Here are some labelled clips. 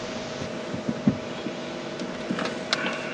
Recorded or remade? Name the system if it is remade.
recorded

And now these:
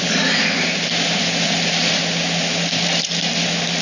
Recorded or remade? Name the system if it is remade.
recorded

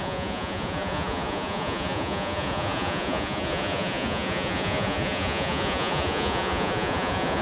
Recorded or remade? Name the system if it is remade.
remade, vocoder, Vocos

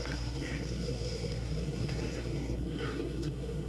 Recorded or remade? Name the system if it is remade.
remade, codec, SNAC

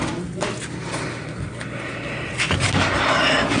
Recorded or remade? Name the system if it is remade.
recorded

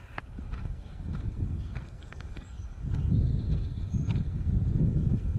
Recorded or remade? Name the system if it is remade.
remade, codec, SNAC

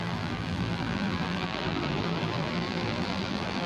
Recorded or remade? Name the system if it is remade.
remade, vocoder, BigVGAN v2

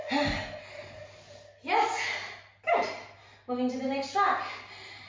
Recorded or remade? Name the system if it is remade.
recorded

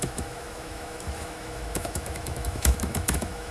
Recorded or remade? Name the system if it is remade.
remade, autoencoder, DAC-VAE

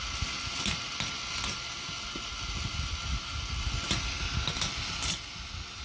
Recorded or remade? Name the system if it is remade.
recorded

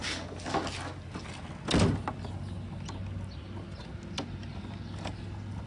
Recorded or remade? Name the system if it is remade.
recorded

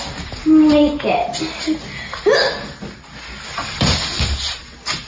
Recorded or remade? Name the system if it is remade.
recorded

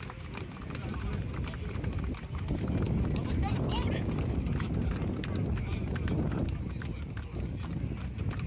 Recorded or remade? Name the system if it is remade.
recorded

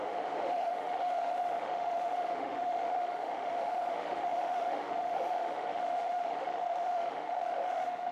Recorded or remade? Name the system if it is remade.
remade, autoencoder, DAC-VAE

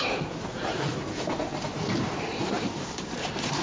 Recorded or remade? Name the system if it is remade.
remade, vocoder, BigVGAN v2